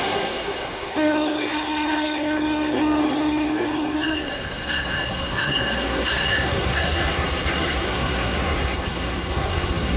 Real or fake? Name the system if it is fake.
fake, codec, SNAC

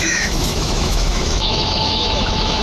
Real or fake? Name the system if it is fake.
fake, autoencoder, DAC-VAE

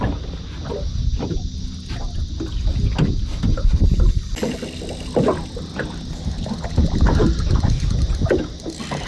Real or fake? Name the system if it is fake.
real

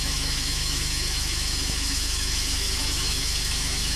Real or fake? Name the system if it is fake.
fake, autoencoder, DAC-VAE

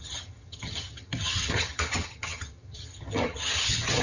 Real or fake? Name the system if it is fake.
fake, vocoder, HiFi-GAN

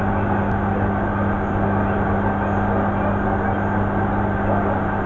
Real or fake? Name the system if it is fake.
real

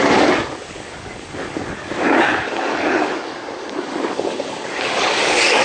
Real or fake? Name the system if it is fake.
fake, codec, DAC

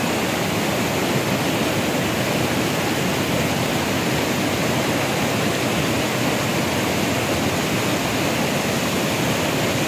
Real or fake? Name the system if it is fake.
real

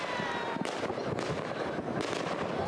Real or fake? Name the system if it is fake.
real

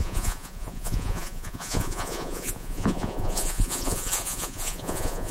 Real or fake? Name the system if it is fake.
fake, vocoder, Vocos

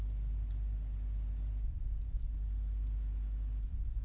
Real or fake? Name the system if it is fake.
real